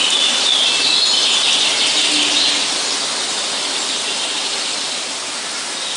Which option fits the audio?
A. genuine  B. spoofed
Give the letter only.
A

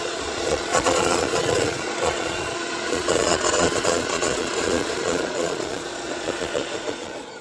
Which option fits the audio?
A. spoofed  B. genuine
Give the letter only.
A